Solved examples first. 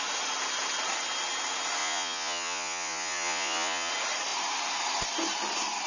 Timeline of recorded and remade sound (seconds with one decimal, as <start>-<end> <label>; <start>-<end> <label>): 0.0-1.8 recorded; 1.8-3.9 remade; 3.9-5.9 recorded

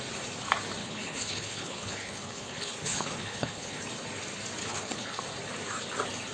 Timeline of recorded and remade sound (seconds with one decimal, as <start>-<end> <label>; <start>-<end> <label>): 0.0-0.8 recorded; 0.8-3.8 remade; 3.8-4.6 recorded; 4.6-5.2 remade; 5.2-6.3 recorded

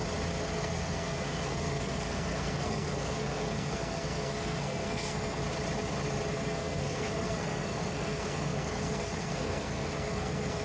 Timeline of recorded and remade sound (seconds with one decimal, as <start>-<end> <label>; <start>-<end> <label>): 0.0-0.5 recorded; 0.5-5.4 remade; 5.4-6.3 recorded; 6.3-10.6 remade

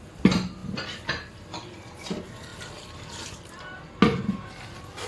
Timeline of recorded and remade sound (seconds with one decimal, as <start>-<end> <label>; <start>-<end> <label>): 0.0-5.1 recorded

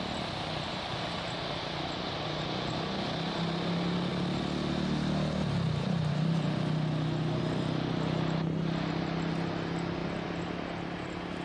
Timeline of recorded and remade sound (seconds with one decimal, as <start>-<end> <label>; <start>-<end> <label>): 0.0-11.4 recorded

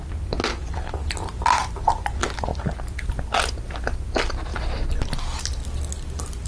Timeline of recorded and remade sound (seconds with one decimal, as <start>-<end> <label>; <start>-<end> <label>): 0.0-6.5 recorded

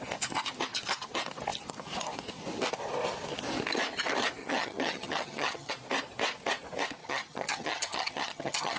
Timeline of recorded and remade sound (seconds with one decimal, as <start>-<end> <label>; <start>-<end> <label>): 0.0-4.4 recorded; 4.4-5.7 remade; 5.7-7.0 recorded; 7.0-8.8 remade

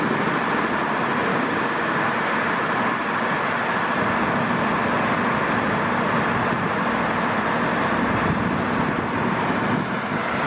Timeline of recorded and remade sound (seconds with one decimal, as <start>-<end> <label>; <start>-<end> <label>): 0.0-1.3 recorded; 1.3-2.1 remade; 2.1-10.5 recorded